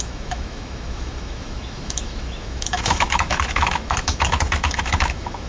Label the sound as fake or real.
fake